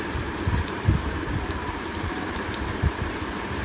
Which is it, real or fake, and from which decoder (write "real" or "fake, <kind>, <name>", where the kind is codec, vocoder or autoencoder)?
fake, vocoder, BigVGAN v2